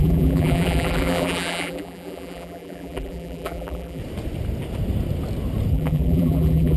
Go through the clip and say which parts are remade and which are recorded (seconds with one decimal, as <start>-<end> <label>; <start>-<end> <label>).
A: 0.0-4.0 remade; 4.0-5.7 recorded; 5.7-6.8 remade